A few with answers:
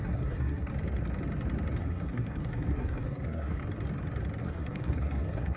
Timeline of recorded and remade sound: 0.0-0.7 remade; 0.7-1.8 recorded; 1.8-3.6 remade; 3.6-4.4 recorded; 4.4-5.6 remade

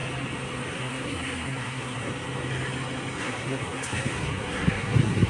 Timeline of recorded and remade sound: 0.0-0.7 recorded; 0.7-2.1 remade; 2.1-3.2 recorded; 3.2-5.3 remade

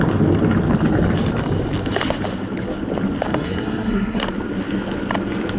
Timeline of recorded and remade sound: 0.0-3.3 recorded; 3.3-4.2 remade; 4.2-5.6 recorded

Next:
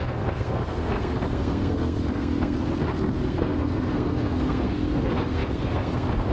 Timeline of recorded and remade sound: 0.0-6.3 remade

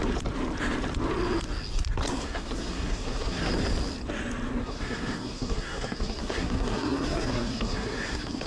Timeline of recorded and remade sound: 0.0-2.1 recorded; 2.1-3.5 remade; 3.5-4.6 recorded; 4.6-8.5 remade

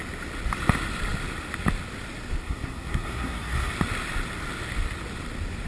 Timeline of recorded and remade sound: 0.0-2.4 recorded; 2.4-3.7 remade; 3.7-5.7 recorded